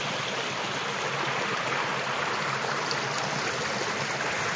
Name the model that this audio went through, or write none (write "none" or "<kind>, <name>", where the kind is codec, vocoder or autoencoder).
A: none